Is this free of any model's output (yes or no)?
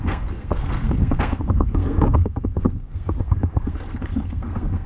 no